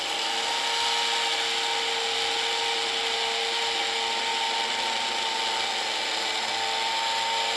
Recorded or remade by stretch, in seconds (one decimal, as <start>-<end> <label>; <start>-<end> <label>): 0.0-7.6 recorded